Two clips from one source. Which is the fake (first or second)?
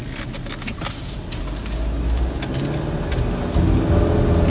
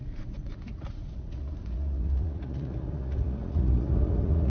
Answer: second